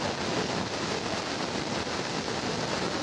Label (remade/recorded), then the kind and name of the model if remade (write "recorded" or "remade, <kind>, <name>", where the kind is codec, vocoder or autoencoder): recorded